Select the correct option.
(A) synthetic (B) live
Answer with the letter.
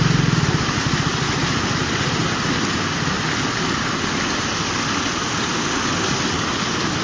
B